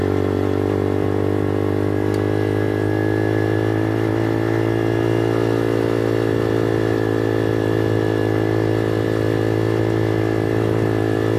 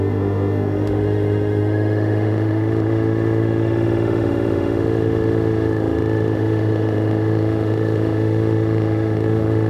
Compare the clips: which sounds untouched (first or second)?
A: first